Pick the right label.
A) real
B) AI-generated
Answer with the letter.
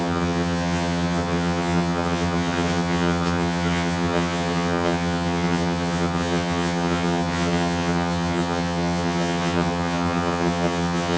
B